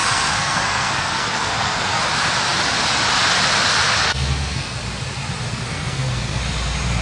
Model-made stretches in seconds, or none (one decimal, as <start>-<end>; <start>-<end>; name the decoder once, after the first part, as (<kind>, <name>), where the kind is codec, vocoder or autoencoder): 0.0-2.0 (codec, SNAC); 4.1-4.8; 5.5-6.4